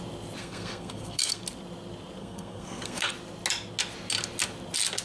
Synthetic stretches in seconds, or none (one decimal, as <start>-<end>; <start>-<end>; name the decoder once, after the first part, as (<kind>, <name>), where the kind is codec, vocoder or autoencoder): 0.4-1.4 (codec, SNAC); 2.2-3.1